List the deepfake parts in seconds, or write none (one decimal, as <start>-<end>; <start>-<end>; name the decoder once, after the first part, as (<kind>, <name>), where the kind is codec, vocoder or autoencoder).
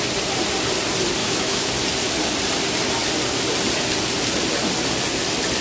1.2-1.7 (autoencoder, DAC-VAE)